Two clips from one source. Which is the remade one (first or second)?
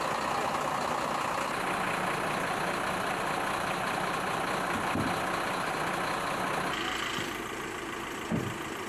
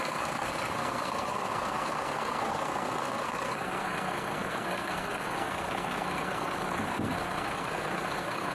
second